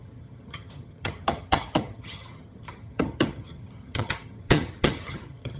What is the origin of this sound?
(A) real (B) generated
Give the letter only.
B